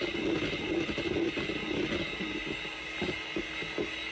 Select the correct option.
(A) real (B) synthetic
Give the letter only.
A